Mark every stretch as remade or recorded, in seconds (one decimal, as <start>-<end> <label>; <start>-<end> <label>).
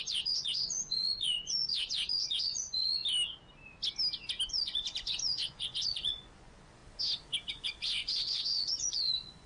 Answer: 0.0-3.0 remade; 3.0-4.5 recorded; 4.5-6.8 remade; 6.8-7.5 recorded; 7.5-9.5 remade